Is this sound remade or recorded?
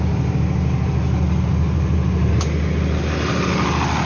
recorded